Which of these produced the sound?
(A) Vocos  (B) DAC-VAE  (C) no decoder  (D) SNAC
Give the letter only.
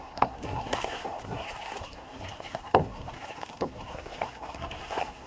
D